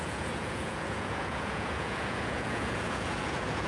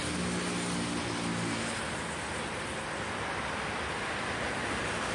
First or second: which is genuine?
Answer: second